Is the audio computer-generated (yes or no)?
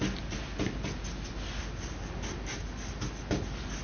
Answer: no